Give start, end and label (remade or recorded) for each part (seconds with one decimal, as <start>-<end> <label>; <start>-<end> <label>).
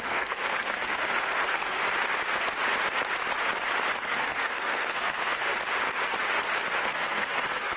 0.0-1.8 remade; 1.8-4.0 recorded; 4.0-5.5 remade; 5.5-6.8 recorded; 6.8-7.8 remade